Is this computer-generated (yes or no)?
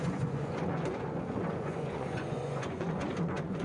yes